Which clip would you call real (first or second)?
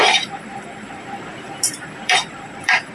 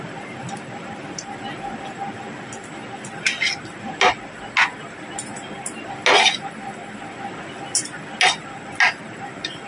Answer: second